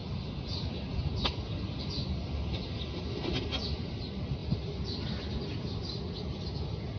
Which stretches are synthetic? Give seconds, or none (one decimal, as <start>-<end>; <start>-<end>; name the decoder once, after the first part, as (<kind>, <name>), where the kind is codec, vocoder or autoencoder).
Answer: 4.4-6.4 (vocoder, BigVGAN v2)